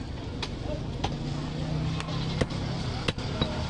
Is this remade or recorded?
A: recorded